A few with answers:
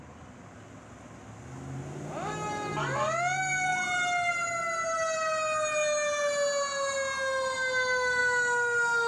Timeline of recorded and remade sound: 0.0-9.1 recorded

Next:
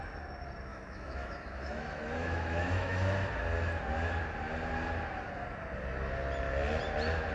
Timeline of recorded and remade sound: 0.0-0.7 recorded; 0.7-3.1 remade; 3.1-7.3 recorded

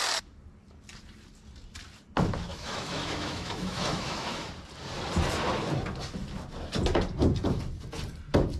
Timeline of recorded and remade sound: 0.0-2.5 recorded; 2.5-4.5 remade; 4.5-8.6 recorded

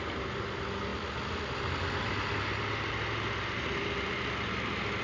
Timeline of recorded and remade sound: 0.0-5.0 recorded

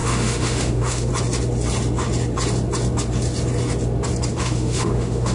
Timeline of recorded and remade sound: 0.0-1.1 remade; 1.1-4.3 recorded; 4.3-5.3 remade

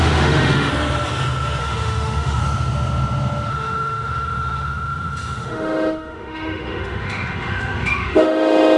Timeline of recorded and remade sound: 0.0-0.7 remade; 0.7-1.6 recorded; 1.6-2.4 remade; 2.4-3.5 recorded; 3.5-8.8 remade